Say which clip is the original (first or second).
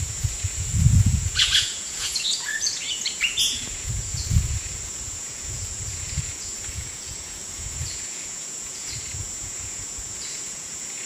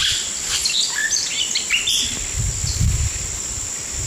second